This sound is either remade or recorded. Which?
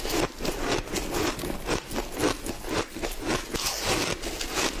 recorded